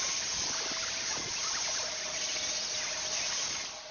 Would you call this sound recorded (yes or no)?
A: yes